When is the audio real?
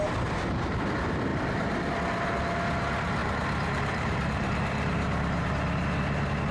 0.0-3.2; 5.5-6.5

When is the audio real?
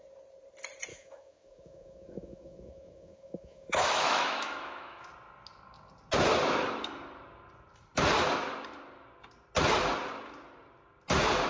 0.0-0.9; 5.1-11.5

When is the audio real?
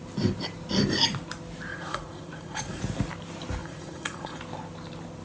0.0-1.7; 2.8-3.6; 4.4-5.2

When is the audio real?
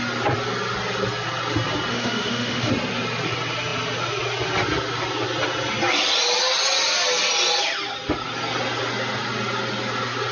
0.0-1.9; 2.7-10.3